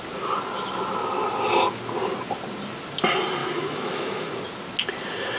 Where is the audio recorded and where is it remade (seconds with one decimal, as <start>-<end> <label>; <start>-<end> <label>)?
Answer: 0.0-3.4 recorded; 3.4-4.4 remade; 4.4-5.4 recorded